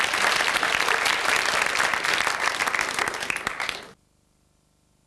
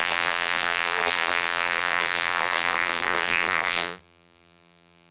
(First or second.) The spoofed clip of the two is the second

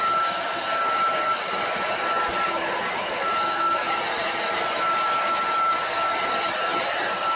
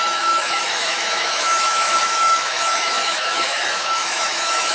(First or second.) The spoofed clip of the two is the second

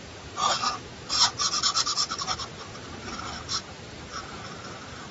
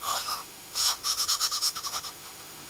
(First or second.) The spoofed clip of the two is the second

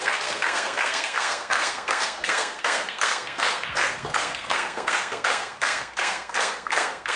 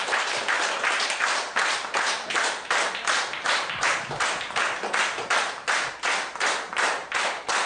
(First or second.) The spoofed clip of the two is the first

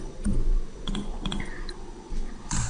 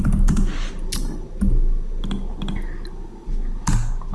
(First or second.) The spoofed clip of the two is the first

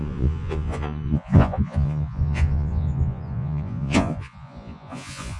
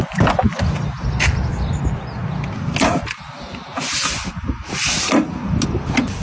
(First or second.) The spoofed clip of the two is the first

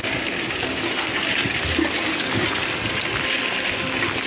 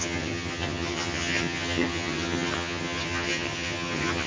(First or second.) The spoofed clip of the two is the second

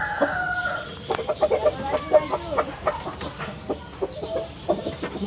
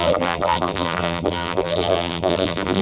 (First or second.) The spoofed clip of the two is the second